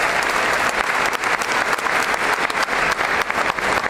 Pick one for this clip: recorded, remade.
recorded